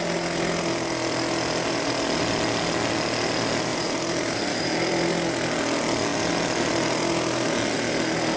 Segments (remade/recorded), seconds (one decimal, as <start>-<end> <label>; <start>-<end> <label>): 0.0-3.7 recorded; 3.7-4.7 remade; 4.7-8.4 recorded